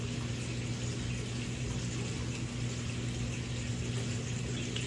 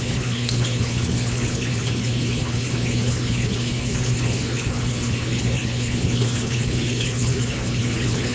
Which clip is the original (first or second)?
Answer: first